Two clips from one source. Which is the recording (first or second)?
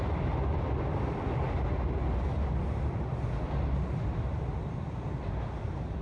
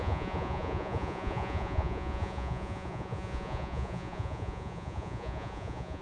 first